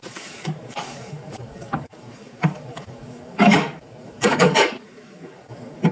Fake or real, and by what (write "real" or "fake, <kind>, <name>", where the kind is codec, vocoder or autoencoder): fake, codec, DAC